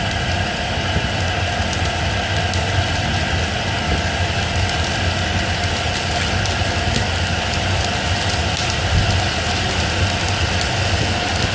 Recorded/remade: recorded